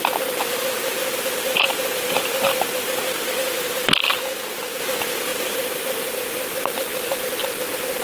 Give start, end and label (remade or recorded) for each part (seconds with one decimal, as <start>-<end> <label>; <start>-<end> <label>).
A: 0.0-1.0 recorded; 1.0-3.0 remade; 3.0-5.3 recorded; 5.3-6.4 remade; 6.4-8.0 recorded